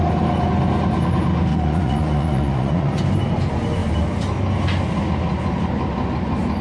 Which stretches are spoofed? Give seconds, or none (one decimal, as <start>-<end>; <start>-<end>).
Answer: 1.5-3.0